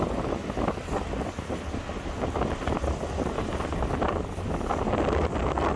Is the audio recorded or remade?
recorded